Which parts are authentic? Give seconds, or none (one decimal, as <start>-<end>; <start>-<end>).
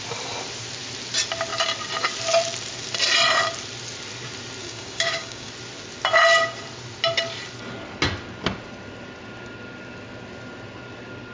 0.0-4.6; 5.5-11.3